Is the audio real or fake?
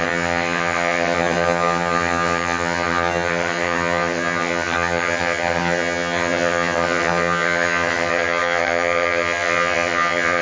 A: fake